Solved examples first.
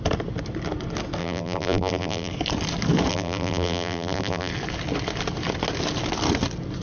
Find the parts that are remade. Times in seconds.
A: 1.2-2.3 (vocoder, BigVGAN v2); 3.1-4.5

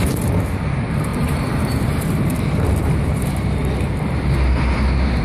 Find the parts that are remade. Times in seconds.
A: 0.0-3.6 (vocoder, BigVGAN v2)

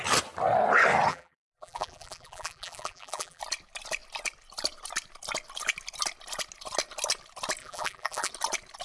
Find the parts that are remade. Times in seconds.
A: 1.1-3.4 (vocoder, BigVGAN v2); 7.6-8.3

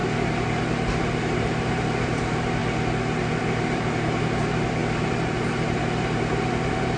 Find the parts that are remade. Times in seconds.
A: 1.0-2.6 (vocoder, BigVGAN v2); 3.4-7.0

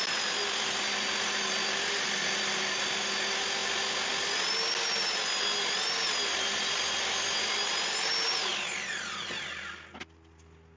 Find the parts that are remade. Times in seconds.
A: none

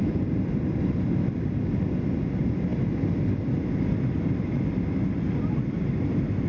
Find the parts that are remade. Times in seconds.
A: none

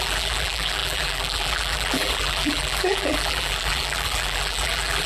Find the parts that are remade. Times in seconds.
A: 0.0-5.1 (vocoder, BigVGAN v2)